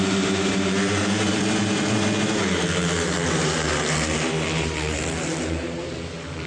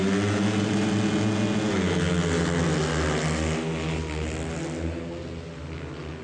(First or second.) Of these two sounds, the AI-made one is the first